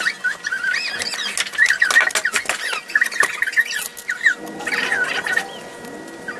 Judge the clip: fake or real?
real